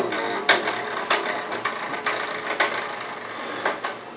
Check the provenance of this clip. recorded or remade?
recorded